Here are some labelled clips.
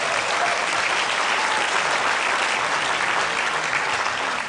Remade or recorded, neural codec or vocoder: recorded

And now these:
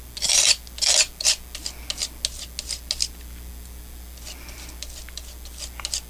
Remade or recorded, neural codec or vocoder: recorded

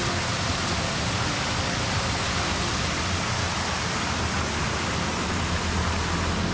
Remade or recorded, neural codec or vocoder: recorded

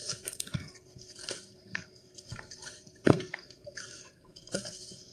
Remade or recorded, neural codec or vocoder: remade, codec, SNAC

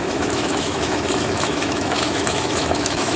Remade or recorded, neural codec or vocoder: remade, autoencoder, DAC-VAE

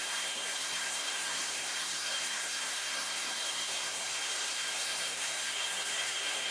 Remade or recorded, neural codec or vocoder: remade, codec, SNAC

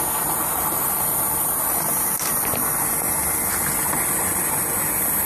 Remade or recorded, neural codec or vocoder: recorded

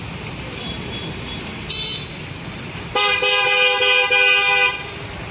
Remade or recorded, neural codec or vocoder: recorded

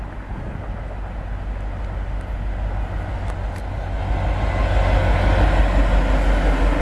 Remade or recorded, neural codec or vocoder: recorded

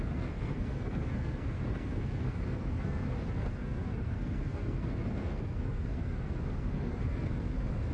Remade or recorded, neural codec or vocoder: remade, codec, SNAC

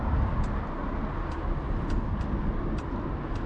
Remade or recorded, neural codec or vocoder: recorded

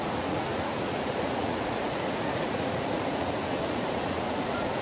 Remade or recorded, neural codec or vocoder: remade, vocoder, Vocos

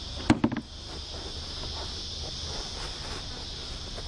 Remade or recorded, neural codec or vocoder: recorded